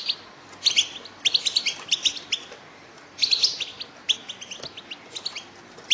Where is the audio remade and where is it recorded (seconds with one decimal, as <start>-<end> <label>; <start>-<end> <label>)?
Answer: 0.0-5.9 recorded